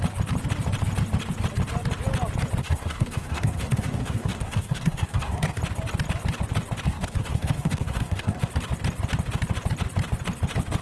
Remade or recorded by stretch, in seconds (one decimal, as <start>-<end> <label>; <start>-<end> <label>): 0.0-2.6 recorded; 2.6-5.6 remade; 5.6-6.9 recorded; 6.9-8.5 remade; 8.5-10.8 recorded